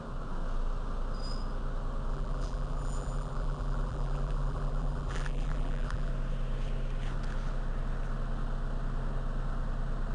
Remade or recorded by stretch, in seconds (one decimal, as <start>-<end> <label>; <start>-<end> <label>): 0.0-2.1 recorded; 2.1-6.1 remade; 6.1-10.1 recorded